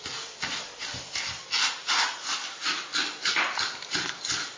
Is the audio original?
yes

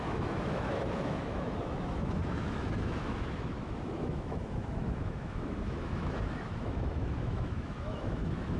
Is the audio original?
no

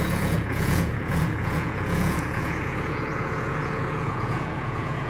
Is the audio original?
no